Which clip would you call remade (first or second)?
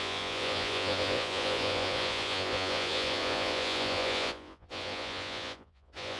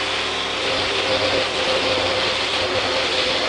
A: first